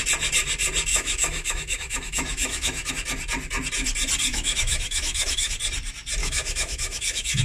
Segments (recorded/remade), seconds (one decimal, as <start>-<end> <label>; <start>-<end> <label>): 0.0-0.9 recorded; 0.9-2.9 remade; 2.9-4.3 recorded; 4.3-5.5 remade; 5.5-6.2 recorded; 6.2-7.4 remade